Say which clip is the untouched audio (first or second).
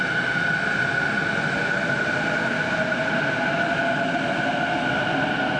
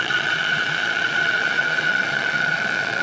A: first